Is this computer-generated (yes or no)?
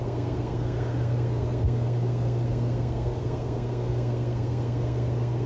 yes